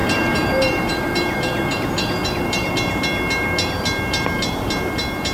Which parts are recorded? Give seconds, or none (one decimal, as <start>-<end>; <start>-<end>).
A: 2.7-5.3